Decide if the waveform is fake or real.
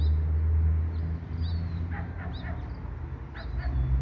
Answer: real